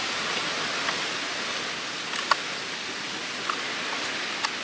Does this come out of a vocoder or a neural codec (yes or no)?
no